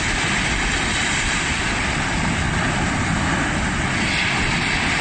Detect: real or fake real